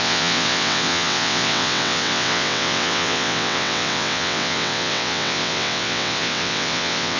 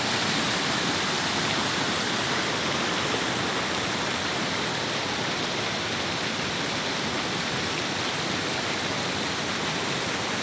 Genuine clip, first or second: second